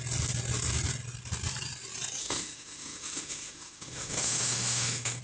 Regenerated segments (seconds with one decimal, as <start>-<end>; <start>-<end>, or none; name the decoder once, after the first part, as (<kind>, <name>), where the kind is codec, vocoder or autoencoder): 2.2-5.2 (autoencoder, DAC-VAE)